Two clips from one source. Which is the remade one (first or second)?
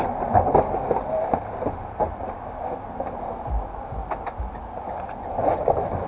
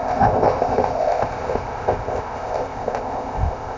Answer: second